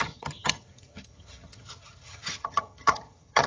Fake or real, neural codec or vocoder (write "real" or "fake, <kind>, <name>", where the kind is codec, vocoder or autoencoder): fake, vocoder, HiFi-GAN